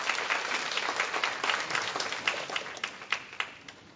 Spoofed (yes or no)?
no